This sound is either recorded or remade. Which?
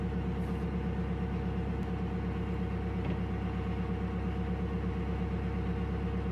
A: recorded